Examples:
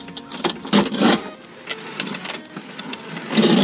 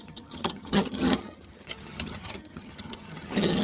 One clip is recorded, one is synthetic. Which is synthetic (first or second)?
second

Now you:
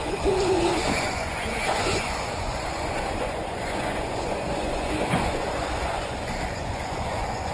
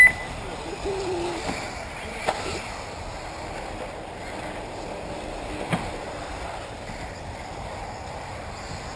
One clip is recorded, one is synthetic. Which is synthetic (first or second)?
first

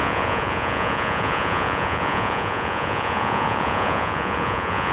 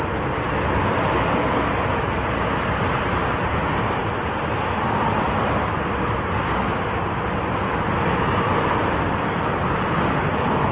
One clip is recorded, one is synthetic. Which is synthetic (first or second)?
first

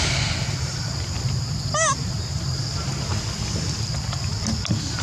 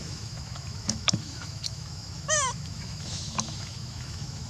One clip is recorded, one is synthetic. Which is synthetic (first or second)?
second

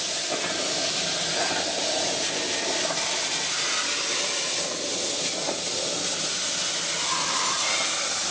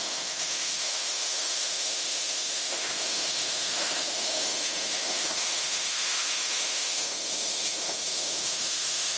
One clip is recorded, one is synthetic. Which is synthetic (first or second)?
second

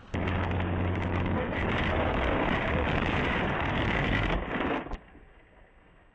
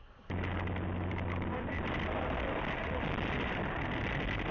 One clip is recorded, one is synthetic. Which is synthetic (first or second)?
first